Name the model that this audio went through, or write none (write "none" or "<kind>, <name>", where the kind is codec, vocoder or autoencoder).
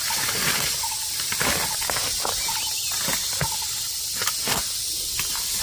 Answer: none